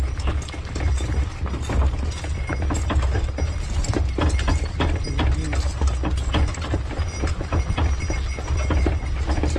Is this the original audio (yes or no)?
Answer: yes